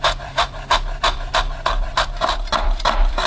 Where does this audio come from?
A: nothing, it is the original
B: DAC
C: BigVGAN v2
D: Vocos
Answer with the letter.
C